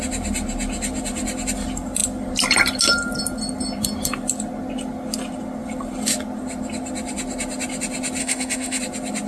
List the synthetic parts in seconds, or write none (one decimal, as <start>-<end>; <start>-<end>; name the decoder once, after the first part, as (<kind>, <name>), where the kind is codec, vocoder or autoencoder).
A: 8.2-8.8 (autoencoder, DAC-VAE)